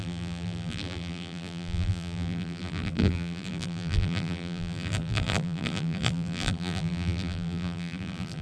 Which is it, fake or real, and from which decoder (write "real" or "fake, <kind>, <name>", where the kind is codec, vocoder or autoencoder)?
fake, vocoder, BigVGAN v2